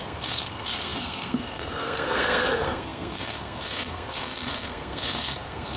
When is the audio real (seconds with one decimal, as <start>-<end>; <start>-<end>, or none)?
none